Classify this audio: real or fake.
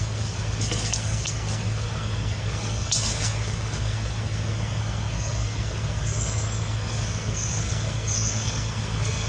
fake